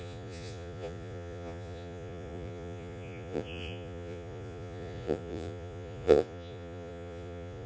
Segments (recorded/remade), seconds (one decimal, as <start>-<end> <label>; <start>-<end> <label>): 0.0-7.7 remade